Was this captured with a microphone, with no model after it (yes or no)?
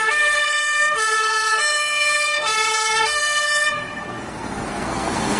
no